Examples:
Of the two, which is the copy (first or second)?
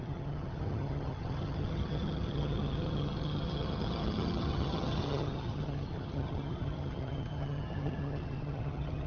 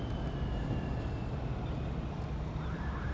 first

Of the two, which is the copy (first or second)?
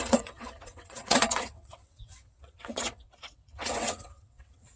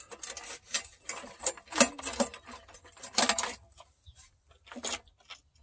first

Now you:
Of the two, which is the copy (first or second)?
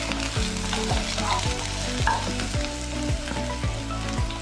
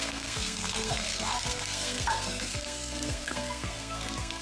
second